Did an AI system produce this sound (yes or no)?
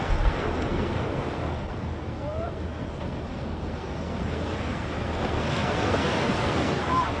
yes